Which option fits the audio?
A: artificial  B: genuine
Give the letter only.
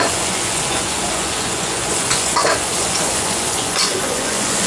A